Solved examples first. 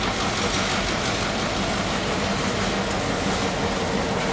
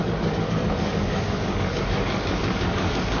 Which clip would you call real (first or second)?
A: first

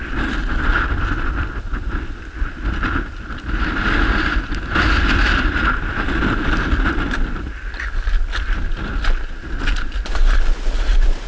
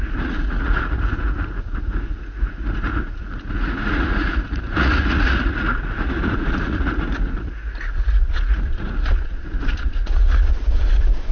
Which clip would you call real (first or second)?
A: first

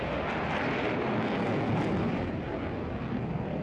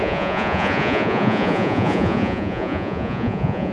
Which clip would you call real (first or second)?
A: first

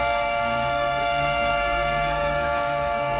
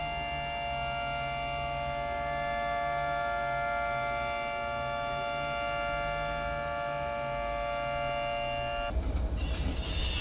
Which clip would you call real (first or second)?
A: second